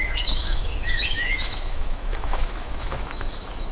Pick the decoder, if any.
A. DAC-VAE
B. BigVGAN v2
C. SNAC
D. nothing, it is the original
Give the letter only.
A